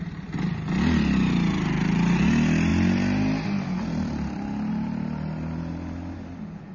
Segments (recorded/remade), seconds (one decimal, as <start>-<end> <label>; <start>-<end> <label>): 0.0-6.7 recorded